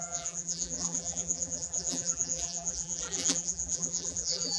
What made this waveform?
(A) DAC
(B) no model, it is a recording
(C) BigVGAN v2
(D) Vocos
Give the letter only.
C